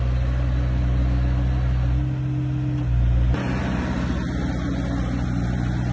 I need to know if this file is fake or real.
real